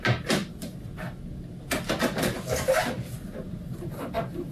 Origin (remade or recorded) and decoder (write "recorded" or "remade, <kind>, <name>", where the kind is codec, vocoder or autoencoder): recorded